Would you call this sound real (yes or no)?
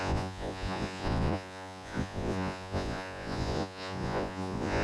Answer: no